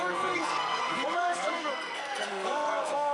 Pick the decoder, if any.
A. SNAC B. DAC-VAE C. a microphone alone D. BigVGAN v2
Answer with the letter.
A